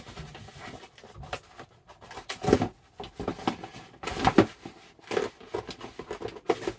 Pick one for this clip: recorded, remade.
recorded